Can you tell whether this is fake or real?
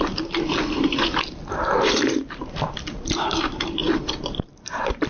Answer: fake